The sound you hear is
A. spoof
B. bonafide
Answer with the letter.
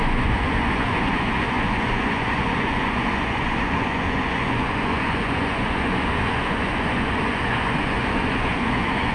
A